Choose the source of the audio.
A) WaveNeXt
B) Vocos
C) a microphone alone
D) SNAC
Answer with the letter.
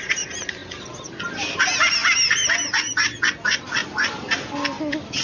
C